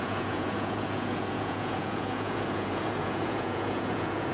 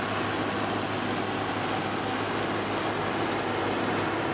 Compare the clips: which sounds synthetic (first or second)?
first